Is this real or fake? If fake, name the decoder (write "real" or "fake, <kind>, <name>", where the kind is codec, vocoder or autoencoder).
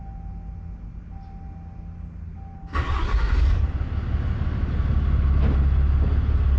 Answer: real